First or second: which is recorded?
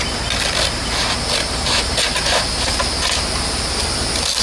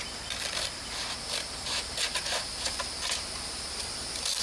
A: first